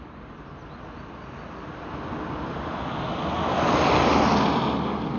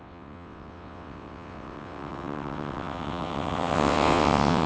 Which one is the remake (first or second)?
second